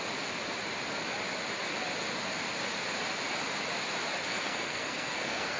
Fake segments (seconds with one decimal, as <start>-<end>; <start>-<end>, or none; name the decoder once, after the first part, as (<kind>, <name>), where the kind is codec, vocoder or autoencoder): 4.3-5.6 (codec, SNAC)